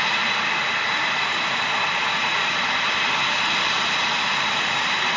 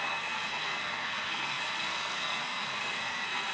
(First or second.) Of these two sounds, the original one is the first